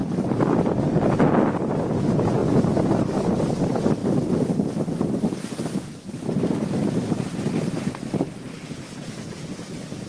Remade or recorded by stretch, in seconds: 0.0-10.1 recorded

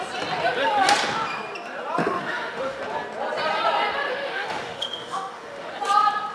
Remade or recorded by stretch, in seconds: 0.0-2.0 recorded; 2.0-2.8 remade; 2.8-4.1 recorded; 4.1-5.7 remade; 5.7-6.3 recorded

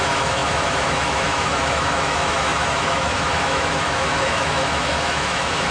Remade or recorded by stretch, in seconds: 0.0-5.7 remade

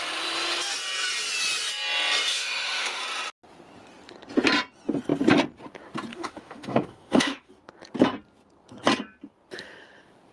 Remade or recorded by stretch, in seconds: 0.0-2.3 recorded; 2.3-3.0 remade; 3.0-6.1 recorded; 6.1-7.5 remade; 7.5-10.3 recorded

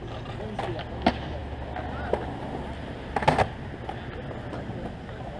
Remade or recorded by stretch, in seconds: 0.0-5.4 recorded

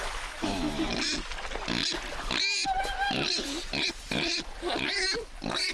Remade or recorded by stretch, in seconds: 0.0-0.9 remade; 0.9-5.7 recorded

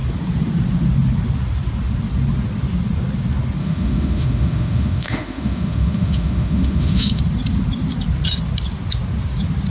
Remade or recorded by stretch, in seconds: 0.0-3.6 recorded; 3.6-7.2 remade; 7.2-9.7 recorded

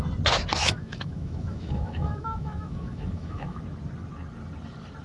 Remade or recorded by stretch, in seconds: 0.0-0.6 recorded; 0.6-3.6 remade; 3.6-5.0 recorded